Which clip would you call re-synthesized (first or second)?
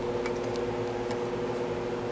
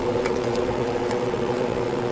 second